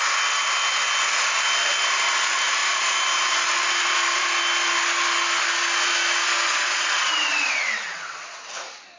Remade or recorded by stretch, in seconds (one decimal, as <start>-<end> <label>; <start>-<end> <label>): 0.0-6.5 recorded; 6.5-8.5 remade; 8.5-9.0 recorded